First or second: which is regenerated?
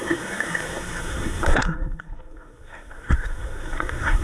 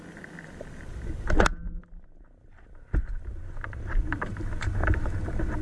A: first